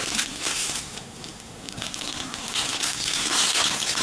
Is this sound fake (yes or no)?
yes